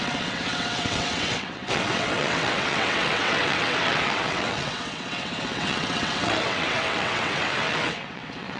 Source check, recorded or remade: remade